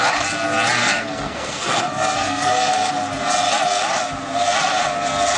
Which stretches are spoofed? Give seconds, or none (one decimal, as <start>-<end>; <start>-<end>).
0.8-2.9